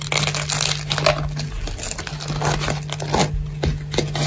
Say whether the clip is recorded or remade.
recorded